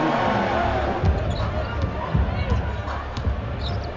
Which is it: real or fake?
real